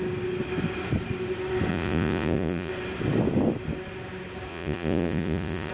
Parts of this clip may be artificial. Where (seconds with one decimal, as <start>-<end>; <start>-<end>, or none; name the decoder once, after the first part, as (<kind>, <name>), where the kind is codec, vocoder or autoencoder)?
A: 1.7-2.7 (vocoder, Vocos); 4.5-5.7